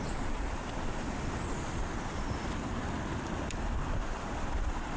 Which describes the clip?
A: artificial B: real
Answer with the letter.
B